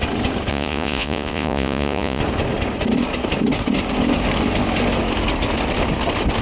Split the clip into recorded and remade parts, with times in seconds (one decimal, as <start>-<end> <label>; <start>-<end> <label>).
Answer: 0.0-0.5 recorded; 0.5-2.2 remade; 2.2-6.4 recorded